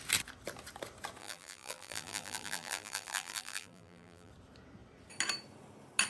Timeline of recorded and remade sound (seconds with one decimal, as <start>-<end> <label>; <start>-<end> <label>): 0.0-1.2 recorded; 1.2-4.3 remade; 4.3-6.1 recorded